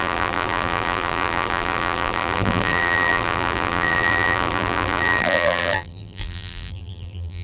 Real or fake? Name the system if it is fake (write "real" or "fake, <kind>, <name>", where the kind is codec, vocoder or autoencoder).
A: fake, vocoder, BigVGAN v2